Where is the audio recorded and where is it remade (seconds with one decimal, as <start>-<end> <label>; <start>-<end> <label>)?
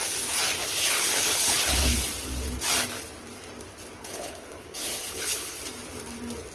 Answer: 0.0-0.6 recorded; 0.6-2.1 remade; 2.1-4.0 recorded; 4.0-5.6 remade; 5.6-6.5 recorded